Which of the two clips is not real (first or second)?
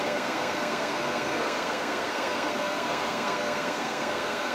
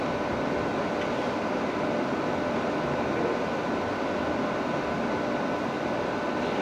first